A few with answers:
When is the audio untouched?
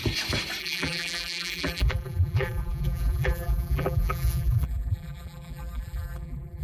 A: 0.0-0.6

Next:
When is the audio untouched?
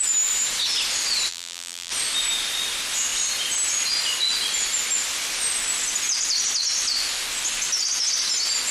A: 0.0-1.3; 1.9-8.7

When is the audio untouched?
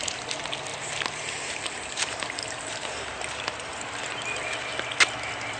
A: 0.0-0.7; 4.1-5.6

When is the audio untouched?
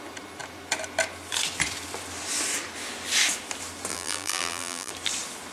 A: 0.0-3.9; 4.9-5.5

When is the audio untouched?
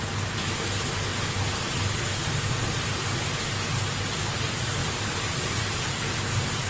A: 0.0-4.8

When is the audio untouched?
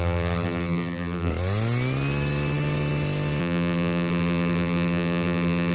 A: 1.3-3.4